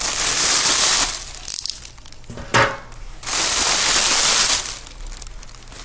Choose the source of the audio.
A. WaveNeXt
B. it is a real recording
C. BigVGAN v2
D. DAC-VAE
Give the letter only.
B